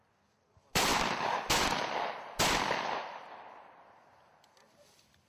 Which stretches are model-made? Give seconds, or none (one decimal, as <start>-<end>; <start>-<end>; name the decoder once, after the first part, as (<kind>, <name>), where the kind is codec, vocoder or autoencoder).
none